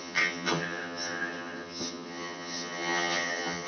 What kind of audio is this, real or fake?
fake